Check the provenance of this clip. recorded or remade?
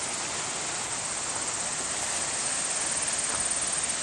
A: recorded